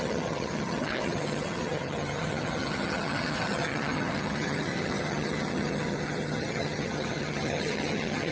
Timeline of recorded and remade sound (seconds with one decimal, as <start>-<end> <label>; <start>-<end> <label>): 0.0-8.3 remade